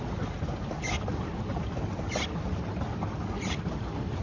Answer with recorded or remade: recorded